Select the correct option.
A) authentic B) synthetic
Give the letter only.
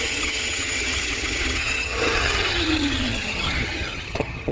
B